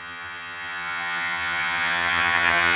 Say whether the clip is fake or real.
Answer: fake